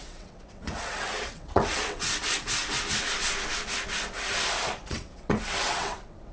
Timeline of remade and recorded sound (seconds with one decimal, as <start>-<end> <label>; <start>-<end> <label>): 0.0-2.6 remade; 2.6-4.9 recorded; 4.9-6.3 remade